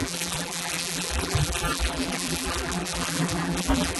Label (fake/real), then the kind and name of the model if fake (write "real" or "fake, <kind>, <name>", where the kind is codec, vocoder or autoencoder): fake, vocoder, BigVGAN v2